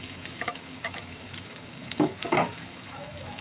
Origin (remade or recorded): remade